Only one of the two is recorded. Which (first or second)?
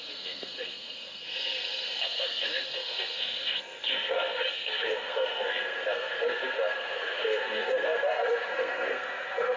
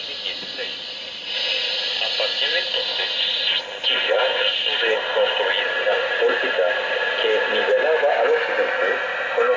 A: second